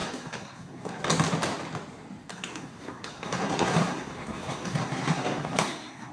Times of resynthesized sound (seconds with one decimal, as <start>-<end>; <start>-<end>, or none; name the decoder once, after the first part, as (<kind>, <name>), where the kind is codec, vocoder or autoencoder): 0.0-1.0 (codec, SNAC); 2.3-6.1